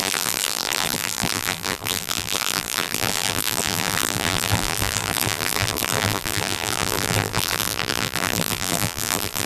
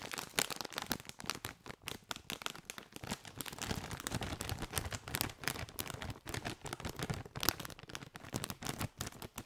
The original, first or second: second